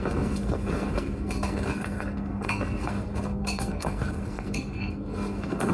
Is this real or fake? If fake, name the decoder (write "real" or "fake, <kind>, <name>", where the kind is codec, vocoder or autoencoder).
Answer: fake, codec, SNAC